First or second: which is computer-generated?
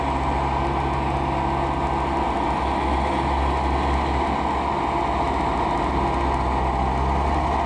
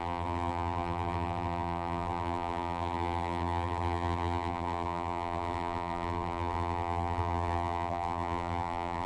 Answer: second